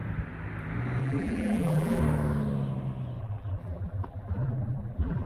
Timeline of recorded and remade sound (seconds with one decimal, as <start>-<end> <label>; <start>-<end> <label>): 0.0-1.0 recorded; 1.0-2.0 remade; 2.0-3.2 recorded; 3.2-5.3 remade